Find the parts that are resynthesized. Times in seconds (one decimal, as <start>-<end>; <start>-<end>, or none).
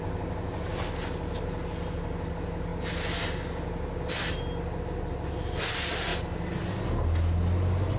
none